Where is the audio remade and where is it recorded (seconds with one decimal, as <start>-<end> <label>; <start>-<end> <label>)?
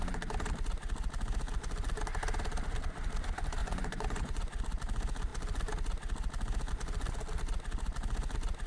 0.0-3.6 recorded; 3.6-4.6 remade; 4.6-8.7 recorded